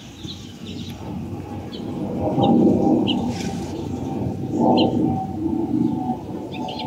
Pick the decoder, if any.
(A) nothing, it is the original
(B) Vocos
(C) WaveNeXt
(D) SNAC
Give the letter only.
A